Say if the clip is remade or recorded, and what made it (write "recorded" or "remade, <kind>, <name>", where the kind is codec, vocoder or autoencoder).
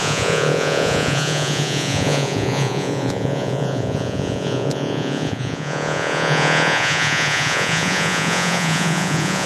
remade, vocoder, Vocos